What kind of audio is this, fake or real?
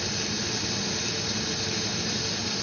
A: real